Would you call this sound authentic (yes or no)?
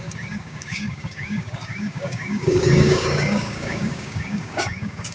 no